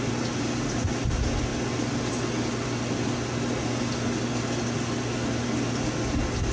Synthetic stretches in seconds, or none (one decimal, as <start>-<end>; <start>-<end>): 1.5-2.1